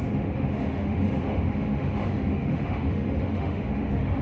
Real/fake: fake